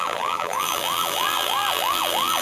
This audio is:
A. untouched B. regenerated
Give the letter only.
B